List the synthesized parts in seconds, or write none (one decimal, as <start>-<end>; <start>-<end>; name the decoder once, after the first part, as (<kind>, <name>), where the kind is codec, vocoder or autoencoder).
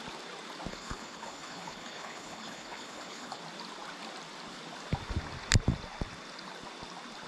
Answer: 0.7-3.4 (codec, HILCodec)